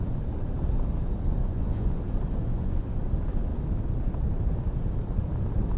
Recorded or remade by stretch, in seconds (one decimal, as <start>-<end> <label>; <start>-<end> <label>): 0.0-1.4 recorded; 1.4-2.0 remade; 2.0-2.4 recorded; 2.4-3.0 remade; 3.0-5.8 recorded